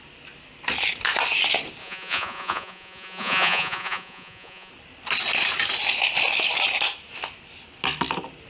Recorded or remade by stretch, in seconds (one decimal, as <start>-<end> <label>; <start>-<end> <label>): 0.0-1.8 recorded; 1.8-4.7 remade; 4.7-8.5 recorded